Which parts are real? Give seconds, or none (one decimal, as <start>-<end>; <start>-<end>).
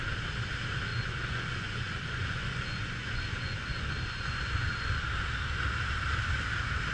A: 0.0-0.9; 5.0-6.9